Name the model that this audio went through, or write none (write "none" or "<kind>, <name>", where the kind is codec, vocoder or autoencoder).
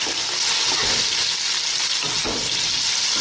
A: none